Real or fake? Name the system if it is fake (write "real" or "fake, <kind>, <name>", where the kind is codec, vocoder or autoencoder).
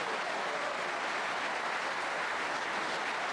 real